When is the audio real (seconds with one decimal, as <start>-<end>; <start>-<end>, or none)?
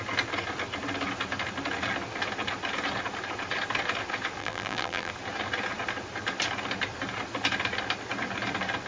0.0-4.4; 5.1-8.9